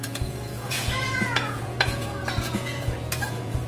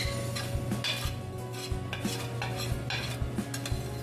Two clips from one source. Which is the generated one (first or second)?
first